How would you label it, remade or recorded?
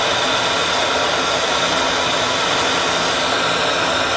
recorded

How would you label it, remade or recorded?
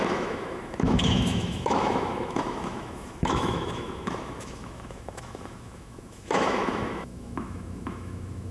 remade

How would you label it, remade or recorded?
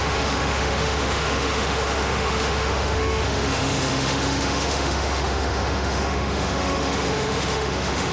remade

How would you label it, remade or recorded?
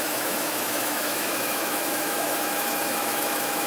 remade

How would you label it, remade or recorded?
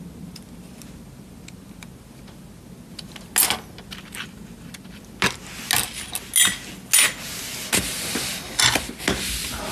recorded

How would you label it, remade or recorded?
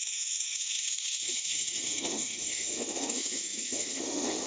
remade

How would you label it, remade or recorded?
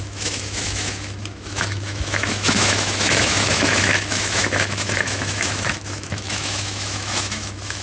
remade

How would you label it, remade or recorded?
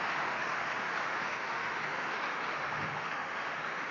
remade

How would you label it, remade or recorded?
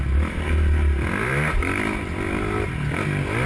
recorded